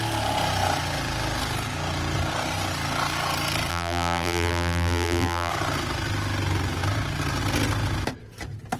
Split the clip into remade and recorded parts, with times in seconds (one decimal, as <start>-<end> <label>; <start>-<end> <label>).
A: 0.0-3.7 recorded; 3.7-5.5 remade; 5.5-8.8 recorded